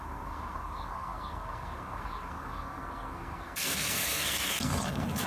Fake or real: fake